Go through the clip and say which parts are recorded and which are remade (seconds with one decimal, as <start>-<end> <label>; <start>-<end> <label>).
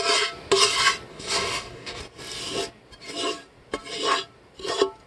0.0-1.1 recorded; 1.1-2.0 remade; 2.0-5.1 recorded